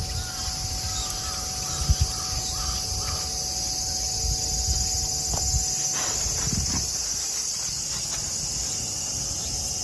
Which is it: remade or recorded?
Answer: recorded